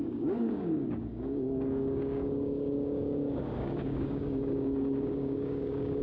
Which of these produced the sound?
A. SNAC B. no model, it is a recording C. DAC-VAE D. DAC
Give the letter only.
D